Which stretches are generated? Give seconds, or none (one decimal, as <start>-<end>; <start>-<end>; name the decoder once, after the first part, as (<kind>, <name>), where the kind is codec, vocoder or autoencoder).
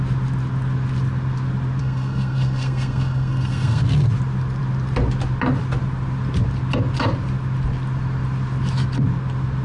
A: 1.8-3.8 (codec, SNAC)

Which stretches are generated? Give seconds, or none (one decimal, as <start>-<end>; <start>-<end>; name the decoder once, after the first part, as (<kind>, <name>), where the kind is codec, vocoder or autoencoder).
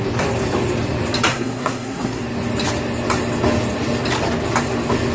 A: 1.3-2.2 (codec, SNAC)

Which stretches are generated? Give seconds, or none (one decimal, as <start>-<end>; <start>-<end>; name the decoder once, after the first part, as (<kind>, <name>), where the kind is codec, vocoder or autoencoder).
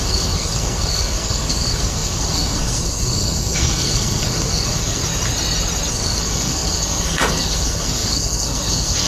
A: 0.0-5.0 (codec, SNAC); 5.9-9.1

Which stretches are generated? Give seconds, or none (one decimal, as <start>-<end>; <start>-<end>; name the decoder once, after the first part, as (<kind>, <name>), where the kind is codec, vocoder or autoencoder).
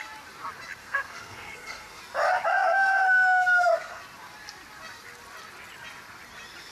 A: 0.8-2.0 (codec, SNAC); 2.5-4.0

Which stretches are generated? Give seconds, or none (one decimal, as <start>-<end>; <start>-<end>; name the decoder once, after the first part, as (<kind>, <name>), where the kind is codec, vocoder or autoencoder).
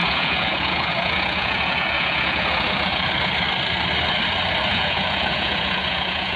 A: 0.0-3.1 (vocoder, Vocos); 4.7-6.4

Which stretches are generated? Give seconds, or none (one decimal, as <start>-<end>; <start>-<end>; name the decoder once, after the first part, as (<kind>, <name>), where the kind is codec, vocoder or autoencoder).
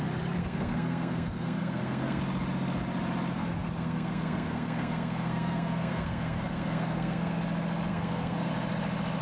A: 0.4-2.2 (codec, SNAC); 3.3-7.4; 7.9-8.5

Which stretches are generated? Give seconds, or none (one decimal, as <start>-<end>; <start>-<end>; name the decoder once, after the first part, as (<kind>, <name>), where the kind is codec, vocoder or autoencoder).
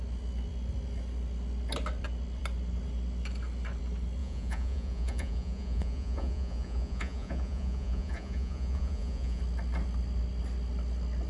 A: 4.2-9.4 (vocoder, Vocos)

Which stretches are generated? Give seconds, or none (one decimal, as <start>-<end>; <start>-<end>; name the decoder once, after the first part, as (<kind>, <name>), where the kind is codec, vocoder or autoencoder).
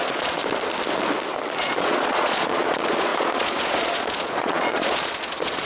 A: 0.0-0.4 (vocoder, Vocos); 1.6-5.7